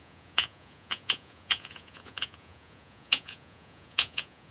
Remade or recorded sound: remade